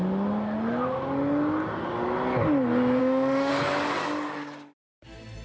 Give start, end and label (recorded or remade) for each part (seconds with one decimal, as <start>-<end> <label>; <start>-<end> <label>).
0.0-3.0 recorded; 3.0-3.5 remade; 3.5-5.4 recorded